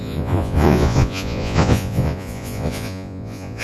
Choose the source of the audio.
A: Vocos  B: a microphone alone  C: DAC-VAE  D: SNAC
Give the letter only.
A